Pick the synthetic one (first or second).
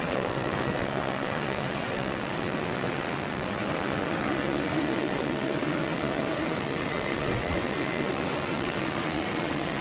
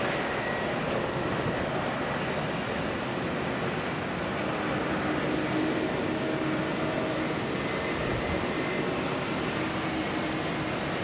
first